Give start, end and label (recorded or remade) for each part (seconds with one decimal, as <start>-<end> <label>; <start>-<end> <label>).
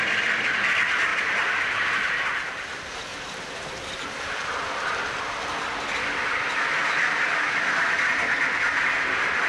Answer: 0.0-1.1 recorded; 1.1-1.9 remade; 1.9-3.1 recorded; 3.1-4.6 remade; 4.6-9.5 recorded